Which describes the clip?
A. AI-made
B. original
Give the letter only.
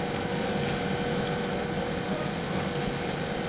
B